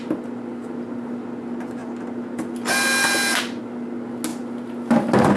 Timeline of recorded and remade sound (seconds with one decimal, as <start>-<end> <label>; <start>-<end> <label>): 0.0-5.4 recorded